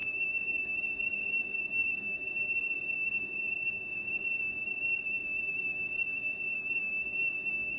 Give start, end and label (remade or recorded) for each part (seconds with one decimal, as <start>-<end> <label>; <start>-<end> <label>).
0.0-7.8 remade